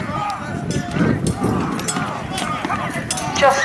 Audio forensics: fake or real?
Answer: real